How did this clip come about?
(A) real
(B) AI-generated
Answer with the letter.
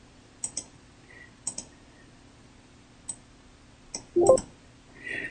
A